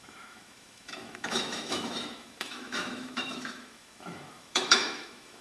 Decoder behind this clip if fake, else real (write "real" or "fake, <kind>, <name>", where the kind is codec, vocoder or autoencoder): fake, autoencoder, DAC-VAE